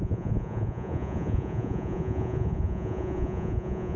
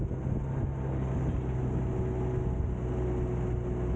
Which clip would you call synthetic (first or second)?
first